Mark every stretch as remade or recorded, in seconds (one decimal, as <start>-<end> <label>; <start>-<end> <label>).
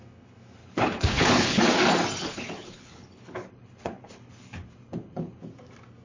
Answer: 0.0-0.6 recorded; 0.6-1.6 remade; 1.6-2.2 recorded; 2.2-5.4 remade; 5.4-6.0 recorded